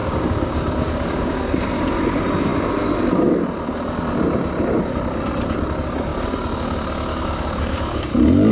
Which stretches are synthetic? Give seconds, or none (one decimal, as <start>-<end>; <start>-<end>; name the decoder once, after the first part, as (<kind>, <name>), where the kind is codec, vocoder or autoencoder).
0.0-1.5 (codec, DAC); 7.1-8.1